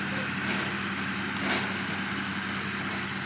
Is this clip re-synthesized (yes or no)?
no